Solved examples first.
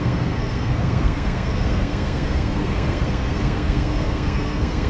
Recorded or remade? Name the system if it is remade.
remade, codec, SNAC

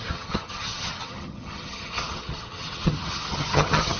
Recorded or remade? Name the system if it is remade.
remade, vocoder, HiFi-GAN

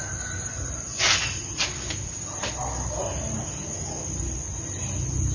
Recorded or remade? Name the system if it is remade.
recorded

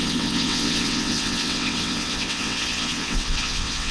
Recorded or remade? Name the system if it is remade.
remade, vocoder, WaveNeXt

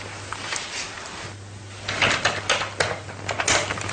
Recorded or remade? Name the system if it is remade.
recorded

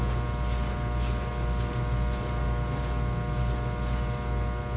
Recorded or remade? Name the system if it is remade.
recorded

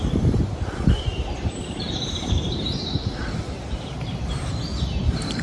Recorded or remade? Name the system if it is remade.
remade, vocoder, BigVGAN v2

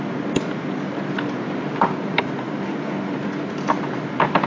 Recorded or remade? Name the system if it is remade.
recorded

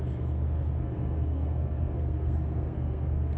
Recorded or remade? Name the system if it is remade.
remade, codec, SNAC